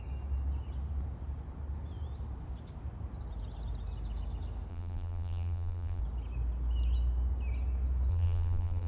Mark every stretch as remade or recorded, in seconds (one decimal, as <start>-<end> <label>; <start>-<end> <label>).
0.0-4.7 recorded; 4.7-6.0 remade; 6.0-8.1 recorded; 8.1-8.9 remade